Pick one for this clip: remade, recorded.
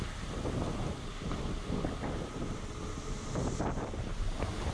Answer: recorded